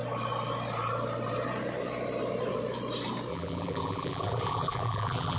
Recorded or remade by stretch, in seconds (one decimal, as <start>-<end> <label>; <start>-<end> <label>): 0.0-3.3 recorded; 3.3-5.4 remade